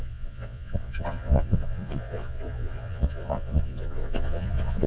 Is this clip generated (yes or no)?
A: yes